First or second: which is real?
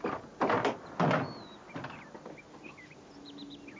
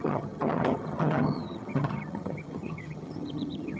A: first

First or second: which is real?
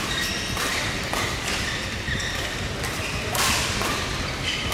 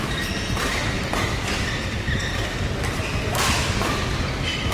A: second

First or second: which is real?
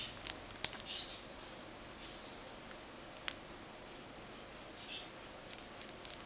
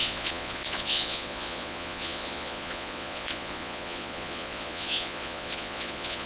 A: first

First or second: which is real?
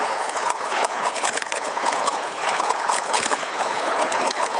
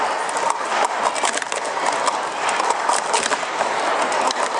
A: second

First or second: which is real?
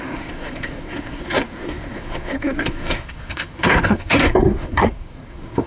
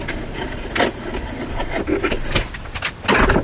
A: second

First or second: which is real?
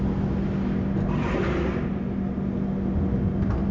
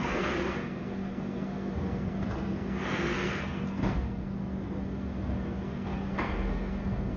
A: first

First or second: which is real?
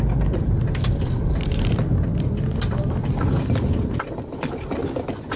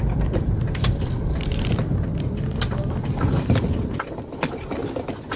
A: first